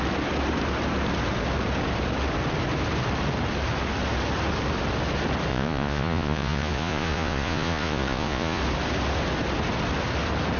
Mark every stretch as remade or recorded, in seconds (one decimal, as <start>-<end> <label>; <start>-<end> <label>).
0.0-5.5 recorded; 5.5-8.6 remade; 8.6-10.6 recorded